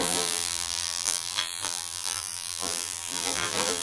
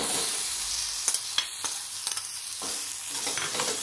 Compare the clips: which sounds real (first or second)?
second